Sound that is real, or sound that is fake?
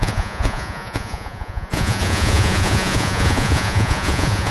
fake